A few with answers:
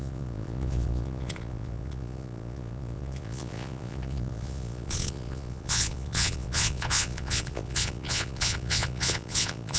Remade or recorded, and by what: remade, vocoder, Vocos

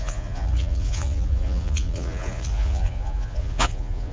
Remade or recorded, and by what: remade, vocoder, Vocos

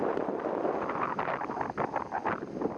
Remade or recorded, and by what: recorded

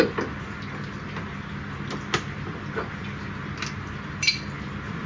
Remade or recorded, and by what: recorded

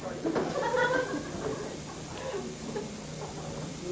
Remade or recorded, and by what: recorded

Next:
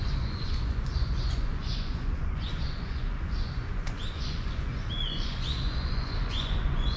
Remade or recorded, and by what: remade, vocoder, Vocos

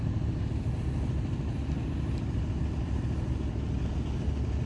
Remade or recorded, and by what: recorded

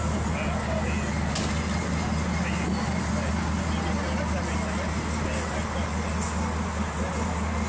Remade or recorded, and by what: recorded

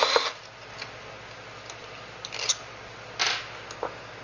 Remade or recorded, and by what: recorded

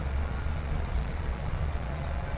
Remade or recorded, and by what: remade, vocoder, Vocos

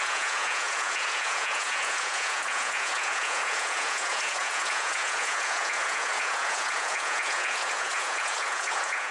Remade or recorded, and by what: remade, vocoder, Vocos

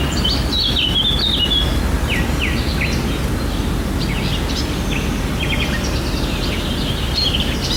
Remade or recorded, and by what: recorded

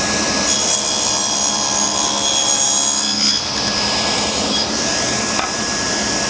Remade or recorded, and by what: recorded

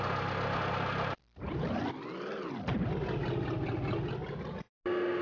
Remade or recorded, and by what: recorded